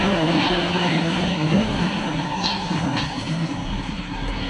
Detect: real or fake fake